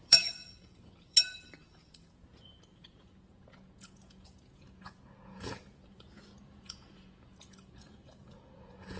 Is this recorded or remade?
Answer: remade